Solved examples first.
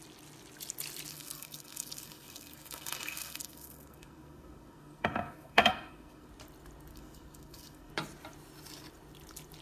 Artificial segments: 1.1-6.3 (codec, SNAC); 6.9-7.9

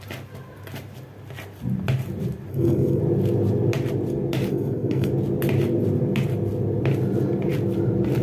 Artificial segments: 2.5-3.0 (codec, SNAC); 4.5-5.1

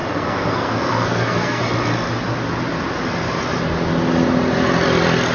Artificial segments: 0.0-1.6 (codec, SNAC)

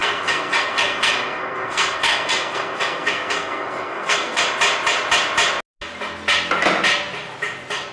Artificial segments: 0.0-4.4 (codec, SNAC)